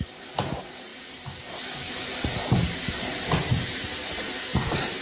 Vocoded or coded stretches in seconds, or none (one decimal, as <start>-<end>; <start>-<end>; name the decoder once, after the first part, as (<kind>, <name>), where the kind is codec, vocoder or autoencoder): none